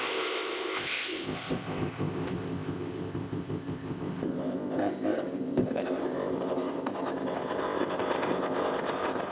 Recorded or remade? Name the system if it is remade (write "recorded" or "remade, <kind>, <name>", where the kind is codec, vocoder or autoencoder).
remade, codec, ZipCodec